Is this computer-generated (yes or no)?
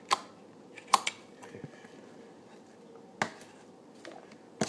no